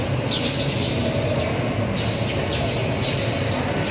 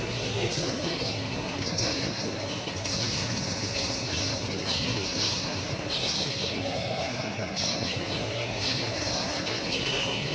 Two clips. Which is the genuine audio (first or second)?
first